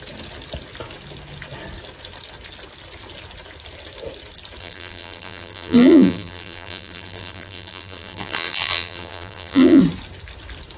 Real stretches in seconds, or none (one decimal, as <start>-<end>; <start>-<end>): 0.0-4.6; 9.8-10.8